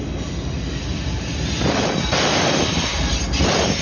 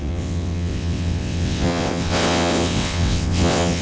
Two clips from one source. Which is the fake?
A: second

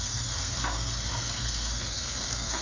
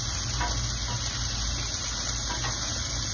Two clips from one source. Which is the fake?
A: first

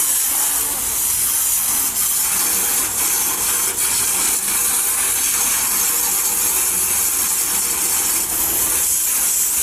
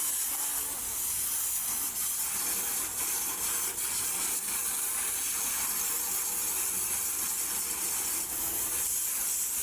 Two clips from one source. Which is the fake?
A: second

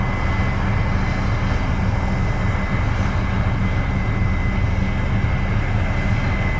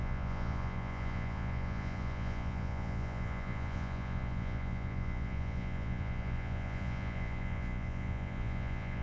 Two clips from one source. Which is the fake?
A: second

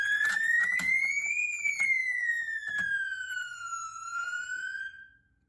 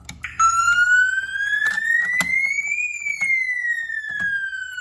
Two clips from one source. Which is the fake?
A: first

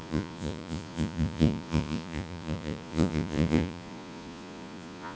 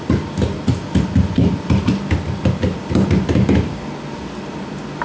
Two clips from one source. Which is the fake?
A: first